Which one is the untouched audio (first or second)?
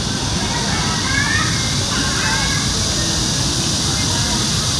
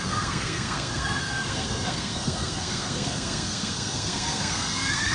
first